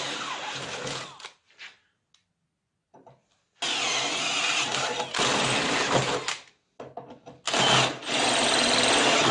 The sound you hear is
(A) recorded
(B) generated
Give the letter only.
A